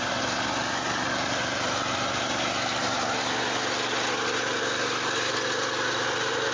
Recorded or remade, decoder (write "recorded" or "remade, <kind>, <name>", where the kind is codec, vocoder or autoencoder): recorded